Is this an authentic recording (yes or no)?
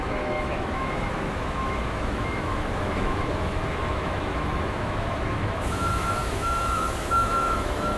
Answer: no